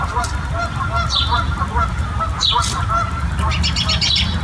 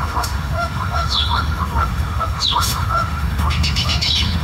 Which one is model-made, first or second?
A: second